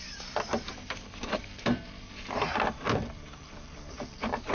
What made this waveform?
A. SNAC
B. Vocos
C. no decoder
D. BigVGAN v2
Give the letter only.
D